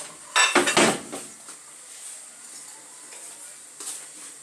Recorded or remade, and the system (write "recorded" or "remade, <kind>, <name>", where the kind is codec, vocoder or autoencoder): recorded